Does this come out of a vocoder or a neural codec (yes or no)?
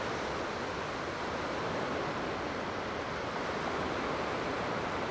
no